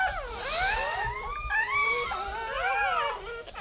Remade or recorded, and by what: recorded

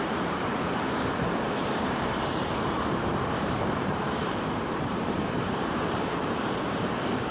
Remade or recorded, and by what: remade, vocoder, BigVGAN v2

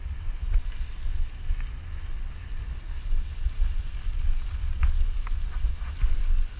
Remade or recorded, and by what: recorded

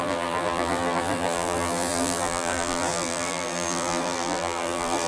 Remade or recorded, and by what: remade, vocoder, BigVGAN v2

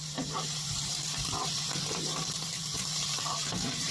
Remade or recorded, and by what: remade, vocoder, BigVGAN v2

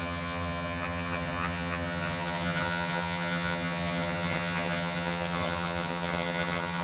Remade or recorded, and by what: remade, vocoder, HiFi-GAN